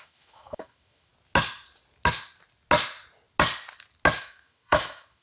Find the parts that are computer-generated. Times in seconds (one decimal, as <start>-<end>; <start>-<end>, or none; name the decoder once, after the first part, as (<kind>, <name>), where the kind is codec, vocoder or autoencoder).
0.0-1.1 (autoencoder, DAC-VAE); 4.2-5.2